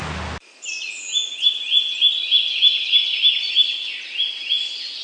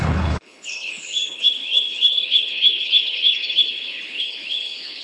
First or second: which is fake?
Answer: second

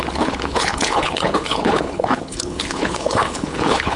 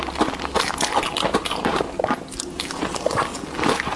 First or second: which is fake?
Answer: first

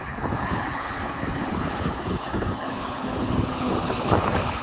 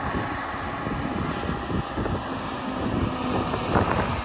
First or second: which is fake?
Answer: first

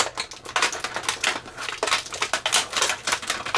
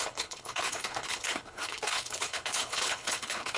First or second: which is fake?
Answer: second